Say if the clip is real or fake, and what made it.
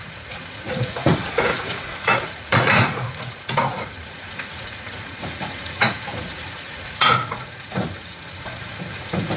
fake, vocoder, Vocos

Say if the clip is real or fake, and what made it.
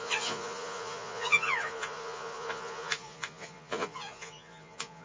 fake, vocoder, Vocos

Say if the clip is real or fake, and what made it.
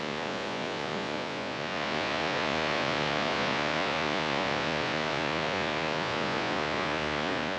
fake, vocoder, Vocos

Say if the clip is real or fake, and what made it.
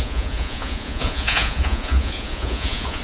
fake, vocoder, Vocos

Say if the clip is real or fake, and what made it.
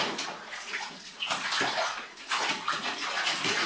fake, vocoder, Vocos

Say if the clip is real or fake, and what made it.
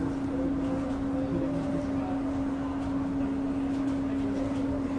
real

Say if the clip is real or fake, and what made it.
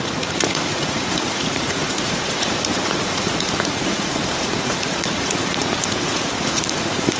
fake, vocoder, Vocos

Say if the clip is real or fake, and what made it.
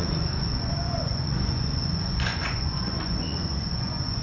fake, vocoder, Vocos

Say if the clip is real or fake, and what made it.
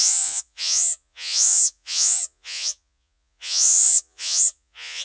fake, vocoder, Vocos